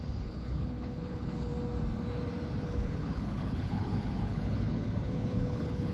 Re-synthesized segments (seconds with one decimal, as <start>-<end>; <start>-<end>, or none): 0.0-1.5; 2.6-5.9